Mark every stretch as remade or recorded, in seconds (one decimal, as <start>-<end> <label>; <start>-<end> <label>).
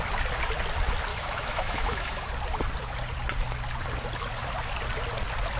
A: 0.0-1.1 recorded; 1.1-2.3 remade; 2.3-5.6 recorded